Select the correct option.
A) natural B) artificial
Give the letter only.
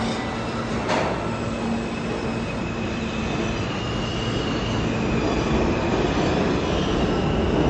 A